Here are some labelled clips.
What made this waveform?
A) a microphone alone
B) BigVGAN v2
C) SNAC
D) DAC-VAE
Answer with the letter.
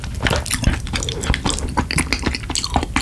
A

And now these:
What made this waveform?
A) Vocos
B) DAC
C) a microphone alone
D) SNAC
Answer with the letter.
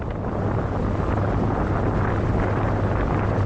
C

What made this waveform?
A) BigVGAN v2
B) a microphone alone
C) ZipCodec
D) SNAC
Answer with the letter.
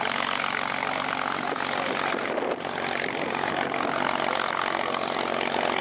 B